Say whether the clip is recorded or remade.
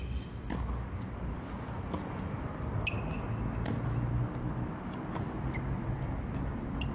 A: recorded